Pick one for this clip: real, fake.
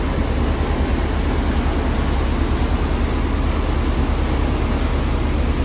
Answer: real